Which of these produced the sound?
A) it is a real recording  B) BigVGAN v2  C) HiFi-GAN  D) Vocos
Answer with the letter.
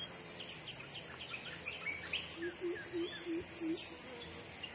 A